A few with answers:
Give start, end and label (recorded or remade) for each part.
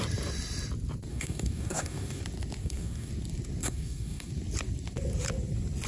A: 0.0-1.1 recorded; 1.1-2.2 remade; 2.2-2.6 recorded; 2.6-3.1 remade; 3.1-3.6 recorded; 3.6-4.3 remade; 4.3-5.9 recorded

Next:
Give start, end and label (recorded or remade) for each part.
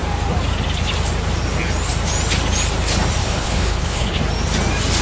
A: 0.0-3.2 recorded; 3.2-4.2 remade; 4.2-5.0 recorded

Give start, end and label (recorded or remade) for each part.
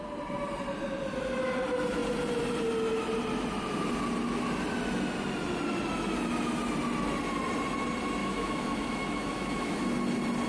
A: 0.0-8.2 recorded; 8.2-9.8 remade; 9.8-10.5 recorded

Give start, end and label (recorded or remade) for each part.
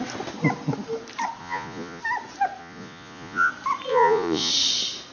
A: 0.0-1.4 recorded; 1.4-2.0 remade; 2.0-2.6 recorded; 2.6-3.5 remade; 3.5-3.9 recorded; 3.9-4.5 remade; 4.5-5.1 recorded